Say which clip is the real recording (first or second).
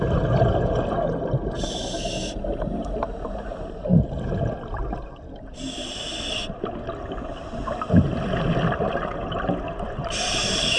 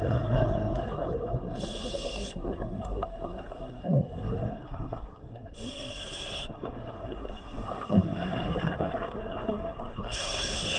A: first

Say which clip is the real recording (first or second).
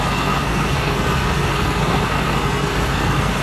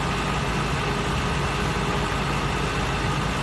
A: second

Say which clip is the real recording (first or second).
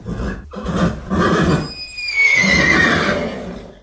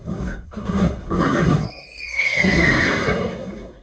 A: first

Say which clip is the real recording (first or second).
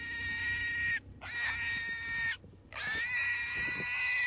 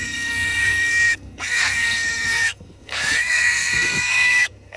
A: first